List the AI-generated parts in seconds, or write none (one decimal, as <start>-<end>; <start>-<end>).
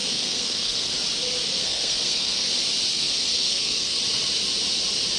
0.0-0.9; 1.6-2.5; 2.9-4.0